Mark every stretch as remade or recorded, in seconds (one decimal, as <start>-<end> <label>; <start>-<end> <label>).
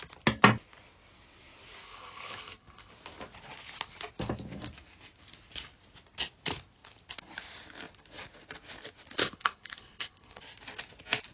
0.0-1.8 recorded; 1.8-2.9 remade; 2.9-9.2 recorded; 9.2-10.4 remade; 10.4-11.3 recorded